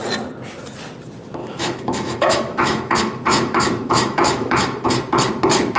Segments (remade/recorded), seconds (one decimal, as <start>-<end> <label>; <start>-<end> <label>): 0.0-1.4 recorded; 1.4-4.9 remade; 4.9-5.8 recorded